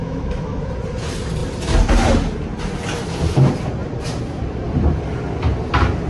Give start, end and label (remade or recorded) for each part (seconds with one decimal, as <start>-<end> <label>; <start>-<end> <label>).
0.0-0.6 remade; 0.6-6.1 recorded